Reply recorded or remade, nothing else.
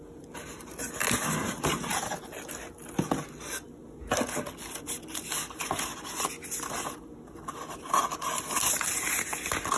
recorded